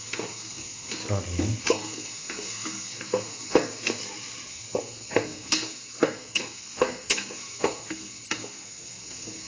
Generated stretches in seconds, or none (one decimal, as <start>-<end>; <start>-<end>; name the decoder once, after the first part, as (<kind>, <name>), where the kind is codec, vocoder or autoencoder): 0.0-1.0 (codec, SNAC); 1.6-4.0; 4.5-9.5